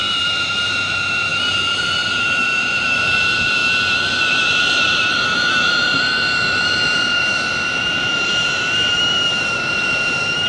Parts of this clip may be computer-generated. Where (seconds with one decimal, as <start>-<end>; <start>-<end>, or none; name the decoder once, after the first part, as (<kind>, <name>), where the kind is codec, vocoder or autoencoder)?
0.0-3.6 (vocoder, BigVGAN v2); 4.1-10.5